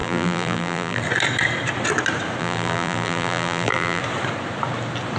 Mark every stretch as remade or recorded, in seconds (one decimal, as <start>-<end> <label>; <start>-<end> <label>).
0.0-1.0 remade; 1.0-2.4 recorded; 2.4-4.0 remade; 4.0-5.2 recorded